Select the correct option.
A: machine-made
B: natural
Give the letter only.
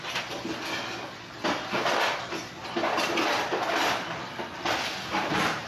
B